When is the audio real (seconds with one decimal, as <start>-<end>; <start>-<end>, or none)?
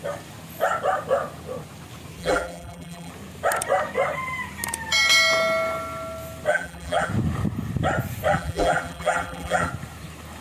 0.0-2.2; 3.1-6.5; 7.1-8.3; 9.7-10.4